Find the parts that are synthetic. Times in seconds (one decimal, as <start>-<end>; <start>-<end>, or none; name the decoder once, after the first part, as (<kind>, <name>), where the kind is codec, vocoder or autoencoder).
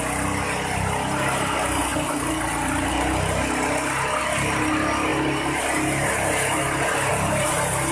none